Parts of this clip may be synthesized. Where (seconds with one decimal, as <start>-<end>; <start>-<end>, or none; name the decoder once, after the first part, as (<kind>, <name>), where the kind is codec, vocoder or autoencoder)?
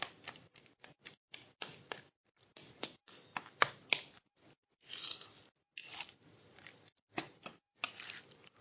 5.8-6.4 (vocoder, BigVGAN v2)